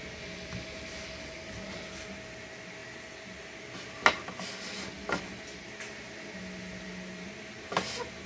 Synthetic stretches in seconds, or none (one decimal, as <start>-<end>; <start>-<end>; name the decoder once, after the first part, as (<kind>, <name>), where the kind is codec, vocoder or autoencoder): none